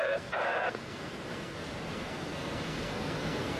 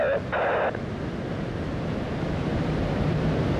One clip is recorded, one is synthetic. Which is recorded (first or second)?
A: second